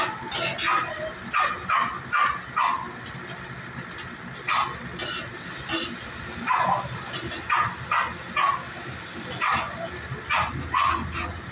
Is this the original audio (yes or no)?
yes